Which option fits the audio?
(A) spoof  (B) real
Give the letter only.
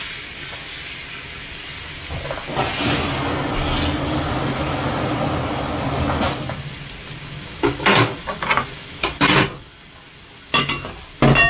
B